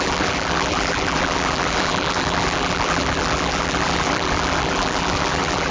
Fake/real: fake